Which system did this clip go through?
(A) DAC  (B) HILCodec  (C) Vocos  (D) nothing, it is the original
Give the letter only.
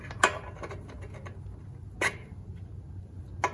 D